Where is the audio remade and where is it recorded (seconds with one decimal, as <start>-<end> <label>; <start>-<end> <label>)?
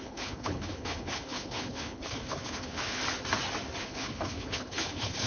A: 0.0-3.0 remade; 3.0-3.8 recorded; 3.8-5.3 remade